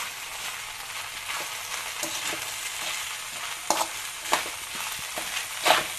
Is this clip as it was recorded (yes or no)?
yes